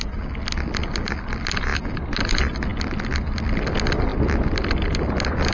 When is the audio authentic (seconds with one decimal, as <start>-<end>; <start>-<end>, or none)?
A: 0.0-5.5